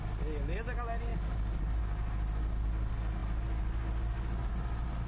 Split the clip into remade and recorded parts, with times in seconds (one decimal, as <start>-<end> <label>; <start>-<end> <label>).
0.0-5.1 recorded